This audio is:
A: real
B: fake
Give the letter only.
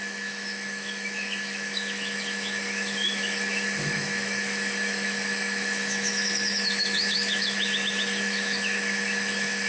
B